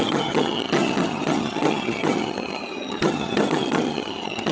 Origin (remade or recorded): remade